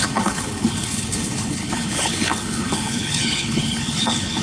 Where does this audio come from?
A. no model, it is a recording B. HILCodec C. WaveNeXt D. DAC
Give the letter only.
B